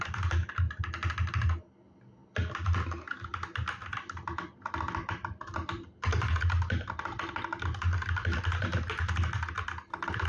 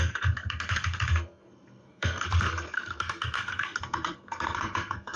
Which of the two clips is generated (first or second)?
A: second